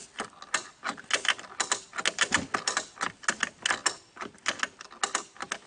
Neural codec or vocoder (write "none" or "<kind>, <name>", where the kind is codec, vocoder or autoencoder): none